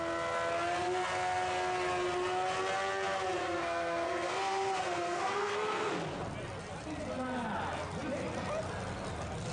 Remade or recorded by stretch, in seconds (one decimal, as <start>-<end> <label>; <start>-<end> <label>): 0.0-3.4 recorded; 3.4-5.9 remade; 5.9-9.5 recorded

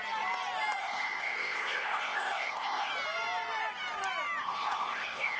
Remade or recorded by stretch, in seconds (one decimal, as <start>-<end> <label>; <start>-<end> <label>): 0.0-0.8 recorded; 0.8-2.9 remade; 2.9-4.4 recorded; 4.4-5.4 remade